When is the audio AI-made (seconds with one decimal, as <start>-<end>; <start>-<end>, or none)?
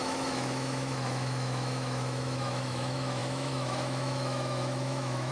0.0-5.3